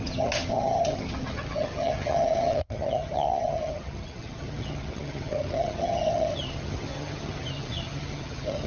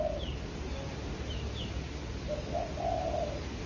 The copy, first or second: first